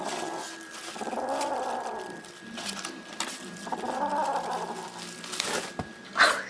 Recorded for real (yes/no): yes